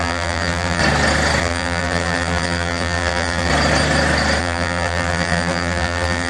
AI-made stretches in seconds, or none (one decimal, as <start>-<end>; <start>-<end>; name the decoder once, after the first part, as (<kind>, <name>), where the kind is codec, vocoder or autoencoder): 0.0-0.8 (vocoder, BigVGAN v2); 1.4-3.5; 4.4-6.3